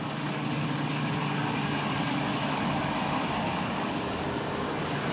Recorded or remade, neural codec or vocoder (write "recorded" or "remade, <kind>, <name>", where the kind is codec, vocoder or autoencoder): remade, codec, DAC